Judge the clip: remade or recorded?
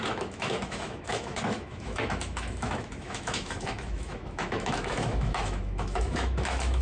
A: remade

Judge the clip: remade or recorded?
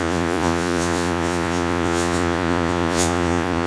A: remade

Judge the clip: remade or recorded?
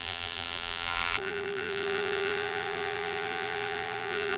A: remade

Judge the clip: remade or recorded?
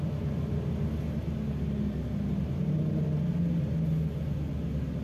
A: recorded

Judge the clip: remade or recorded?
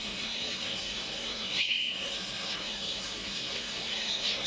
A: remade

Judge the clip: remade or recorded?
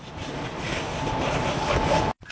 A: recorded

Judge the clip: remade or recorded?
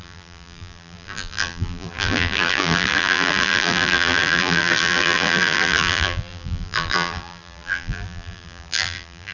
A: remade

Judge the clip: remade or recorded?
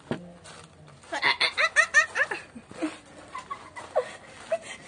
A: recorded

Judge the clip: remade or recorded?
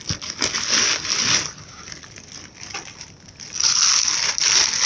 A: recorded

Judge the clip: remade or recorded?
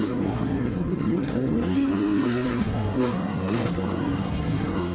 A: remade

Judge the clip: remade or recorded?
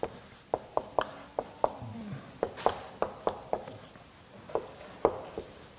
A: recorded